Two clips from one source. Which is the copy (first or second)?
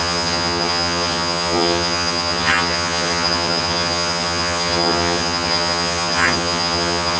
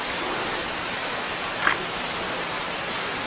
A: first